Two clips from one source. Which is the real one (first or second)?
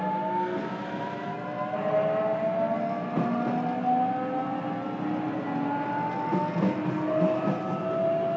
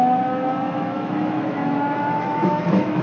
first